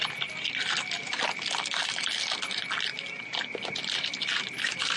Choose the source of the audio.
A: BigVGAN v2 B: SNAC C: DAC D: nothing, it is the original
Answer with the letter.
D